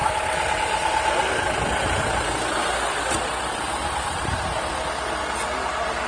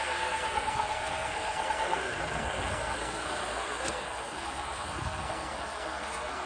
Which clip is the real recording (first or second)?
first